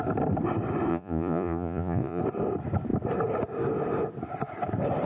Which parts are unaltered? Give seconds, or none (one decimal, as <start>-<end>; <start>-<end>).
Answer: 0.0-0.9; 2.2-5.0